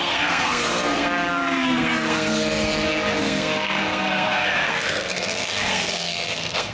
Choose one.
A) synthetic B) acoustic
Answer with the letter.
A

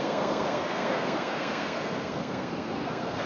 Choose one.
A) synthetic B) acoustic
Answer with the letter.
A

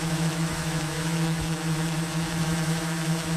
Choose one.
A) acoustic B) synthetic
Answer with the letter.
B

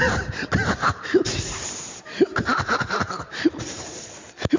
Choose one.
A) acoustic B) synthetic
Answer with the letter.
B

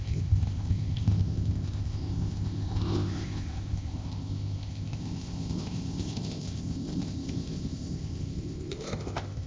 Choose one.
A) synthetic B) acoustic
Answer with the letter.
A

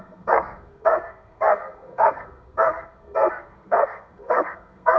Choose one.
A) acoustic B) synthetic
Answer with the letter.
B